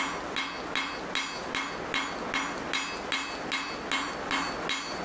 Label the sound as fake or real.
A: real